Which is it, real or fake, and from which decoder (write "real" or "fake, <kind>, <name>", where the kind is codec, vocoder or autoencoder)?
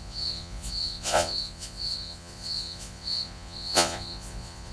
fake, vocoder, Vocos